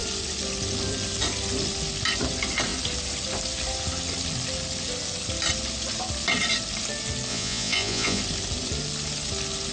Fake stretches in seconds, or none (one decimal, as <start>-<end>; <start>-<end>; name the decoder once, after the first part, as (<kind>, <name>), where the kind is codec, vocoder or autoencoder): 7.3-8.2 (vocoder, Vocos)